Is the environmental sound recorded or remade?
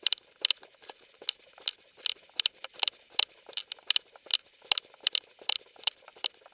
recorded